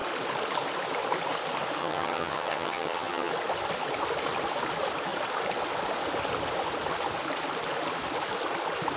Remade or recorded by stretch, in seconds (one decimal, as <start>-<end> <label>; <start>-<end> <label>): 0.0-1.8 recorded; 1.8-3.3 remade; 3.3-9.0 recorded